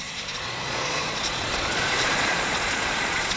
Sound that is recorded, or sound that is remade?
remade